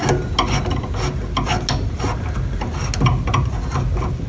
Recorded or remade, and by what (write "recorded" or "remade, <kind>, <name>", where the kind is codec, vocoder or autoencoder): recorded